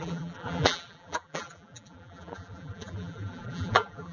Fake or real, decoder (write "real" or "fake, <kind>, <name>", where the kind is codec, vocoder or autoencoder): fake, vocoder, BigVGAN v2